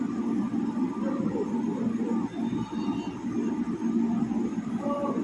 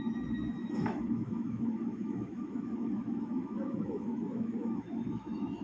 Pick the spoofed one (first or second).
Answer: second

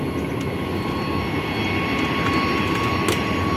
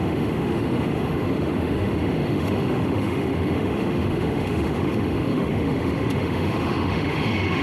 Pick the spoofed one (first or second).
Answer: second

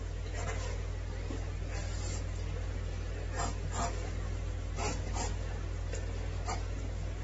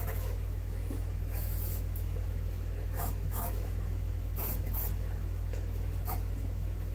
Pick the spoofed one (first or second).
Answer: second